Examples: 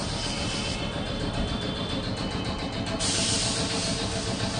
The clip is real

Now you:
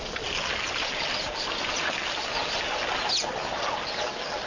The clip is real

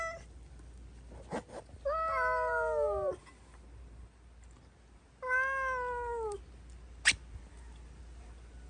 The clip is real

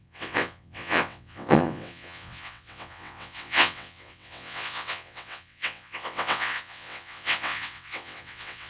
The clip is fake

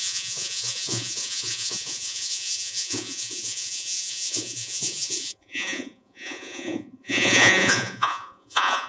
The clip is fake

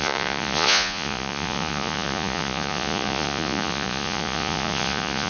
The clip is fake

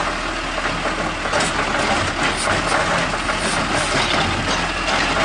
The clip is real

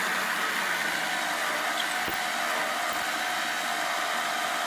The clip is real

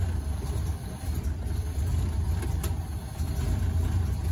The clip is real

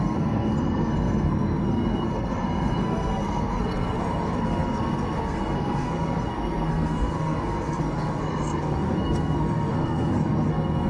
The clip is fake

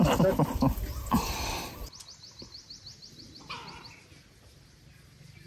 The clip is real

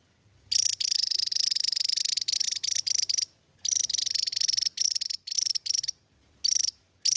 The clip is real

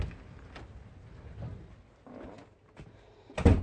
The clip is real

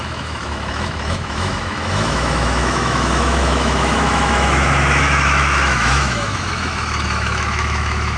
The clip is fake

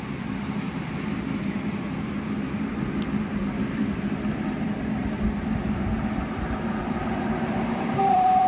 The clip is fake